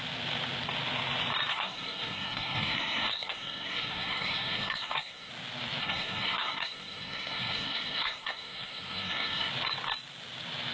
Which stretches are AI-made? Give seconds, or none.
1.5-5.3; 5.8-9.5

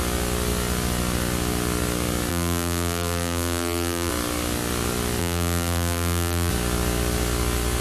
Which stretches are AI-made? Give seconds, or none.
2.3-4.1; 5.2-6.5

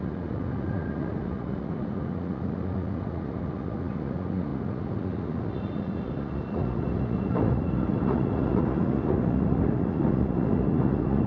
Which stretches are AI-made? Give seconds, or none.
0.0-11.3